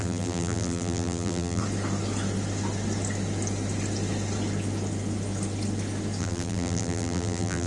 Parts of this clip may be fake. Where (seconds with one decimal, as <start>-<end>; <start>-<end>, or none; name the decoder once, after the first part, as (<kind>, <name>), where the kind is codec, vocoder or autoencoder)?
0.0-1.6 (vocoder, BigVGAN v2); 6.2-7.7